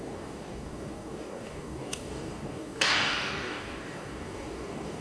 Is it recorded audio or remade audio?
remade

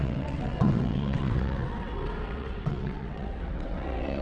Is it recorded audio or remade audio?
remade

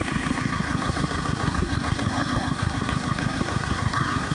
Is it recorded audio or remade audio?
remade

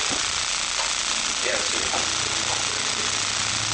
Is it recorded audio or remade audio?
recorded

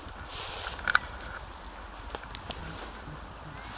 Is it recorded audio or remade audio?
recorded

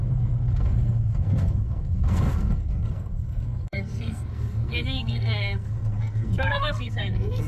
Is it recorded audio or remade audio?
remade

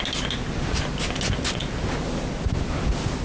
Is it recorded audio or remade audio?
recorded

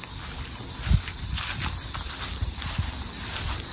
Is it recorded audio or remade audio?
recorded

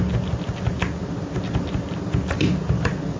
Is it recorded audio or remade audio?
recorded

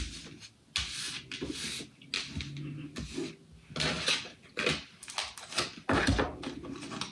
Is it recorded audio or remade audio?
recorded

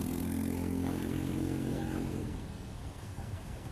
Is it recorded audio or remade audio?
remade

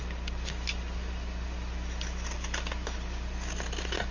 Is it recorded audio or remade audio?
recorded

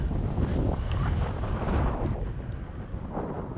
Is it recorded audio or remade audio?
recorded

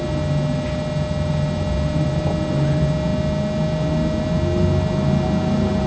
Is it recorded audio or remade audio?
recorded